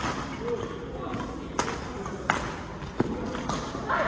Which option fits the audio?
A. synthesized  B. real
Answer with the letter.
B